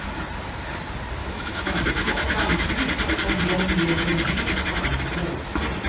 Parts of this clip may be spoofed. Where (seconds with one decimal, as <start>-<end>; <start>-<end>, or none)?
1.2-2.7